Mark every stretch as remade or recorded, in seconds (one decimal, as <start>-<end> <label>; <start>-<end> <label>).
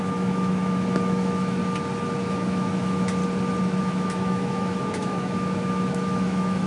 0.0-1.6 remade; 1.6-2.2 recorded; 2.2-3.2 remade; 3.2-3.8 recorded; 3.8-6.7 remade